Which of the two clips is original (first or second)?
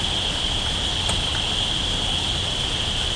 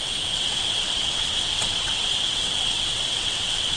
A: first